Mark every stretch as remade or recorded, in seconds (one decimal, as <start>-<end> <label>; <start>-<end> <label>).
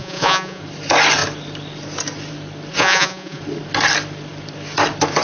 0.0-0.6 remade; 0.6-2.7 recorded; 2.7-3.4 remade; 3.4-5.2 recorded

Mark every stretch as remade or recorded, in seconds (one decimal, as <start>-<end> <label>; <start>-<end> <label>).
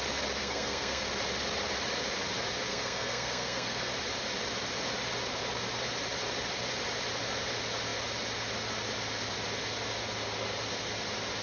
0.0-0.4 recorded; 0.4-1.0 remade; 1.0-2.7 recorded; 2.7-3.9 remade; 3.9-11.4 recorded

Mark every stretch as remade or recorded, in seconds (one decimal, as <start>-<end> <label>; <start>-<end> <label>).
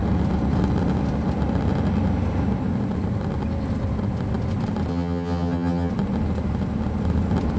0.0-4.9 recorded; 4.9-5.9 remade; 5.9-7.6 recorded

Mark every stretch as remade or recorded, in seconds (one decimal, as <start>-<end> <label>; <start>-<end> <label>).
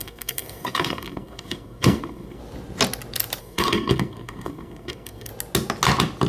0.0-2.4 remade; 2.4-3.4 recorded; 3.4-5.3 remade; 5.3-6.3 recorded